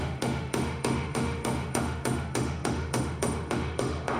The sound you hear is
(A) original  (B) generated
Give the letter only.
B